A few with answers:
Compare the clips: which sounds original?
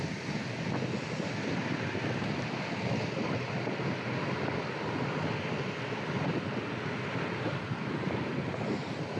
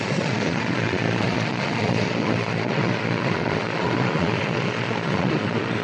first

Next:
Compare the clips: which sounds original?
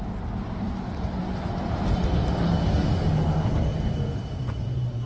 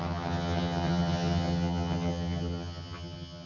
first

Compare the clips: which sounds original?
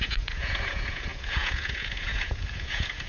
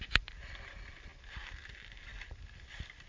second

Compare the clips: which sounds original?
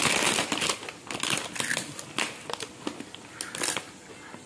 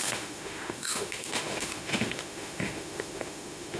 first